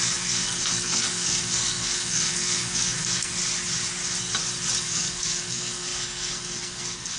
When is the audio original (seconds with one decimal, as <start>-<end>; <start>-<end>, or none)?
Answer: 3.4-4.8